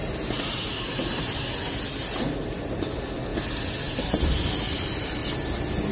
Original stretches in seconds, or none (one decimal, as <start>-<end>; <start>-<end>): 1.2-5.9